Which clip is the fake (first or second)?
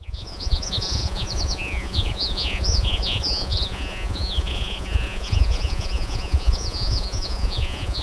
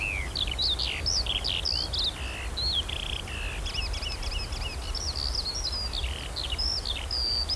first